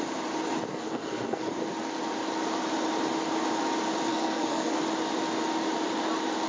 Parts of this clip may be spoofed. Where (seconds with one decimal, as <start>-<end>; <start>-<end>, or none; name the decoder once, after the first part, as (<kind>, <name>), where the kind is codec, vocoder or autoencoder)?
0.7-1.5 (codec, SNAC); 4.1-4.8